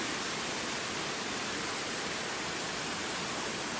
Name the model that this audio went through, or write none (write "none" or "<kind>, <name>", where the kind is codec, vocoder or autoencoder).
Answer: none